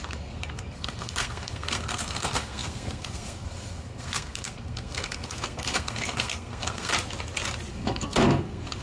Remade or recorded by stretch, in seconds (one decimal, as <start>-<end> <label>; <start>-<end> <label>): 0.0-6.9 remade; 6.9-7.7 recorded; 7.7-8.8 remade